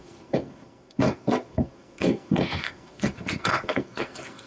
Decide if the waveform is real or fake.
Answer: fake